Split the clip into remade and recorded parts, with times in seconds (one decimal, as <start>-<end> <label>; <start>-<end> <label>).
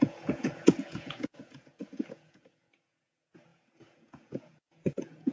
0.0-5.3 remade